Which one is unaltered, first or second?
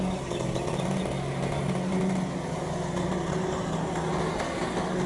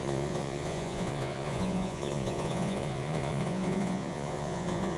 first